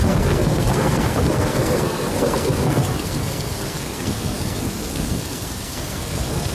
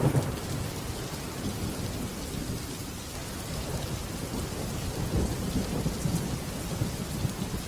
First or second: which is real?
second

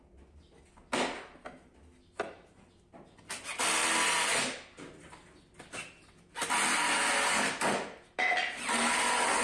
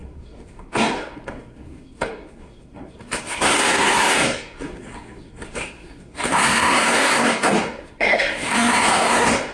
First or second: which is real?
first